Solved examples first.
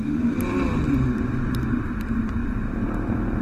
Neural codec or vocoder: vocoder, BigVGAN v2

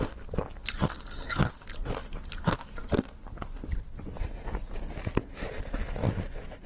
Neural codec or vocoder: none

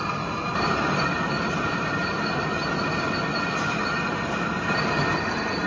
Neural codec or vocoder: none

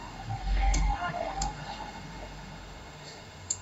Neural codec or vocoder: autoencoder, DAC-VAE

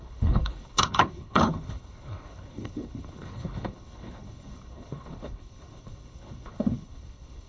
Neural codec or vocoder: codec, HILCodec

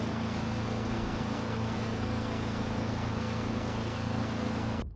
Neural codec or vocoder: codec, SNAC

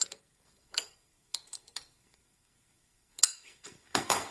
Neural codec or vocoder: codec, SNAC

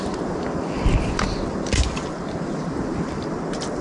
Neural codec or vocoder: none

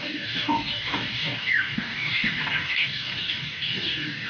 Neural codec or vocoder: codec, DAC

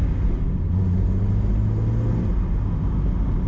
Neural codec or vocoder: none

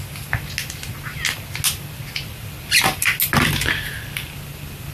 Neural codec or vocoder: none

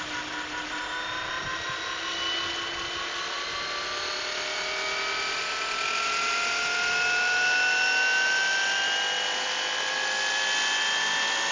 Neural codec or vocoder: none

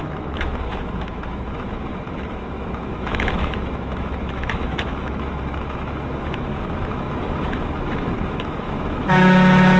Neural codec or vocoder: autoencoder, DAC-VAE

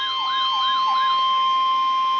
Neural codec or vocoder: none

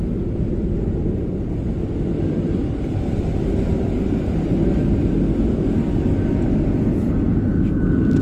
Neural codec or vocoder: none